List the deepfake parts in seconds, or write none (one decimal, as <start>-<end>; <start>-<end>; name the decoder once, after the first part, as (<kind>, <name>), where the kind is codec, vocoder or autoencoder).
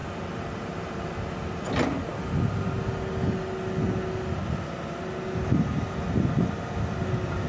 none